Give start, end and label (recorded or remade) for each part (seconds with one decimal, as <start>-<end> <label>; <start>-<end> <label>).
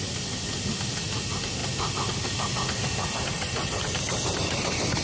0.0-5.0 recorded